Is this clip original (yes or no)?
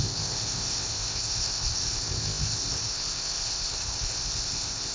no